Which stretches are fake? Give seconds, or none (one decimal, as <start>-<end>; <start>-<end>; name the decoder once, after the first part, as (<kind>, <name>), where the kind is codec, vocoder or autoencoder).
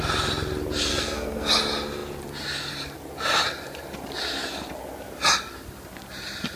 0.9-1.5 (codec, SNAC)